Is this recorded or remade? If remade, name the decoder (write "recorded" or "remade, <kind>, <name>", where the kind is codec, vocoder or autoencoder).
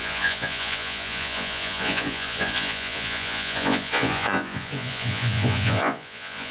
remade, vocoder, Vocos